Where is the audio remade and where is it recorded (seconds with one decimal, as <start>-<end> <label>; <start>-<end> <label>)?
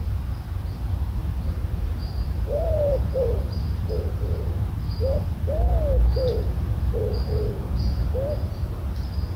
0.0-1.2 recorded; 1.2-5.2 remade; 5.2-9.4 recorded